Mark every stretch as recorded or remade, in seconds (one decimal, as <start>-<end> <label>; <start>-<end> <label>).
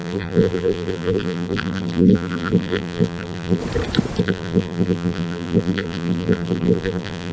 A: 0.0-3.6 remade; 3.6-4.2 recorded; 4.2-7.3 remade